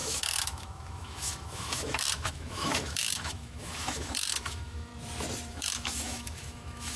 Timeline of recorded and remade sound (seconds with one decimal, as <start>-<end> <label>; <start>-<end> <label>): 0.0-4.9 remade; 4.9-5.5 recorded; 5.5-7.0 remade